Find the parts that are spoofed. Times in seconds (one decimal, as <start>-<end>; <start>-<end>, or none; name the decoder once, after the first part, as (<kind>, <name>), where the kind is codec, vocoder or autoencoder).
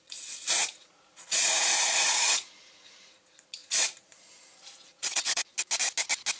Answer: 0.0-5.5 (vocoder, Vocos)